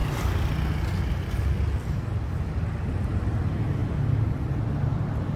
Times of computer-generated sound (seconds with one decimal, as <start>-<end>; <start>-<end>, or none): none